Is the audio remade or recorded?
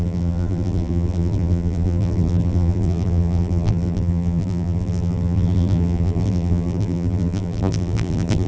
remade